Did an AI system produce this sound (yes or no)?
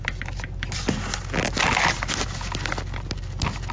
no